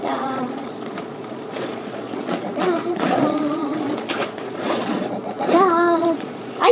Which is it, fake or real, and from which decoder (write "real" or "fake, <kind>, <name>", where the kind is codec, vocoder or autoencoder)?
fake, vocoder, Vocos